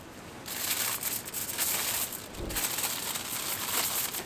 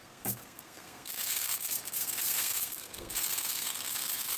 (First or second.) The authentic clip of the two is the first